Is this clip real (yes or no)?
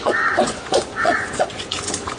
no